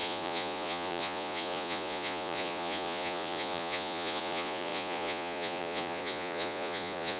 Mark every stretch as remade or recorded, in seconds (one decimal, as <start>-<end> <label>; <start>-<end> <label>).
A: 0.0-7.2 remade